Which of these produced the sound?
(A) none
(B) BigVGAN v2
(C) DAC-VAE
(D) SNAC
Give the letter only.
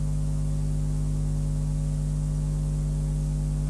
A